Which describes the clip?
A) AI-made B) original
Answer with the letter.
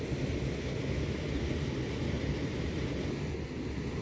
B